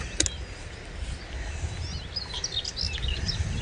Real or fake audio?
real